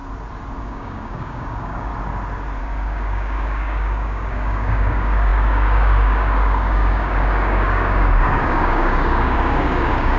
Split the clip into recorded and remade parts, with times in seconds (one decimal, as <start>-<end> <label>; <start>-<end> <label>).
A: 0.0-0.6 recorded; 0.6-1.9 remade; 1.9-2.6 recorded; 2.6-10.2 remade